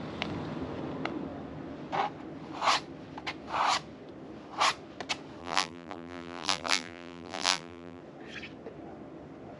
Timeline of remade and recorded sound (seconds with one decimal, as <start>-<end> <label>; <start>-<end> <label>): 0.0-5.4 recorded; 5.4-8.0 remade; 8.0-9.6 recorded